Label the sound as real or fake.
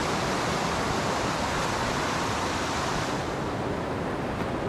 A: real